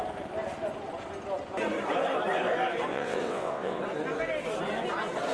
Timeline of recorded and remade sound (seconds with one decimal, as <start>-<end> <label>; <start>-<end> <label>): 0.0-2.9 recorded; 2.9-3.8 remade; 3.8-5.3 recorded

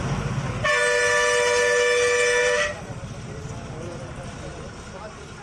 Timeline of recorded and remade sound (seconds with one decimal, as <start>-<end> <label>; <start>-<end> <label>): 0.0-2.4 recorded; 2.4-3.5 remade; 3.5-4.5 recorded; 4.5-5.4 remade

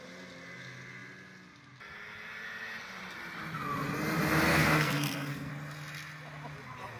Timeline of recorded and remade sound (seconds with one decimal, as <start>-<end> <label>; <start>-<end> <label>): 0.0-4.5 recorded; 4.5-5.5 remade; 5.5-7.0 recorded

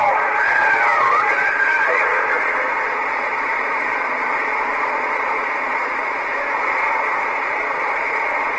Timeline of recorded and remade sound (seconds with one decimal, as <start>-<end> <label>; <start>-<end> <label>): 0.0-8.6 remade

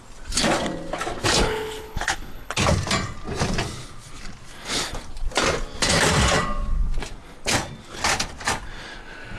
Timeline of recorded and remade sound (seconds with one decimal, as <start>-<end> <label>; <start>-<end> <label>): 0.0-1.4 recorded; 1.4-2.6 remade; 2.6-9.4 recorded